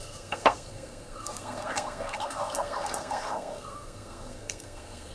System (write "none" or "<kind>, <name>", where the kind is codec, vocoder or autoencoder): codec, SNAC